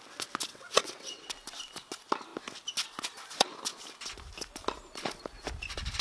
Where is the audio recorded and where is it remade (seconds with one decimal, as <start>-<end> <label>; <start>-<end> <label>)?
0.0-0.5 recorded; 0.5-1.3 remade; 1.3-6.0 recorded